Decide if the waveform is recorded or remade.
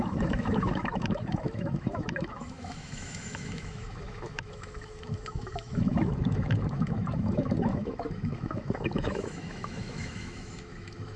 remade